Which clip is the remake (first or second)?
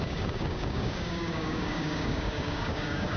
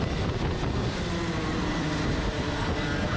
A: first